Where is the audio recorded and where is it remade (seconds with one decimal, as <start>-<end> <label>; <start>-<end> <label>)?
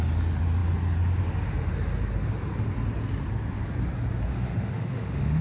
0.0-4.3 recorded; 4.3-5.4 remade